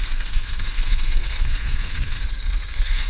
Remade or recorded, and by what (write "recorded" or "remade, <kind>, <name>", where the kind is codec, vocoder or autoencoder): remade, codec, SNAC